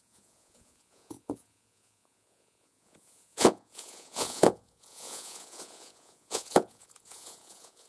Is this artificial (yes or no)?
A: yes